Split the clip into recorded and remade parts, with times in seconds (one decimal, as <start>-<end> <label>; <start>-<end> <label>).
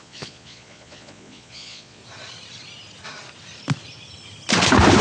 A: 0.0-2.0 remade; 2.0-5.0 recorded